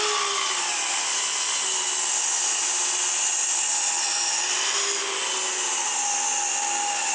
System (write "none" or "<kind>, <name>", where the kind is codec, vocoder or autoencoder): none